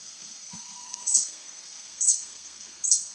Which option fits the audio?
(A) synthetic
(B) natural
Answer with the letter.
A